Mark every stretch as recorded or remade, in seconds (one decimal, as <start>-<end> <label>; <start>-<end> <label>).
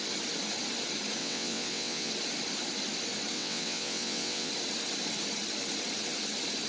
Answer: 0.0-1.2 recorded; 1.2-2.1 remade; 2.1-3.3 recorded; 3.3-4.5 remade; 4.5-6.7 recorded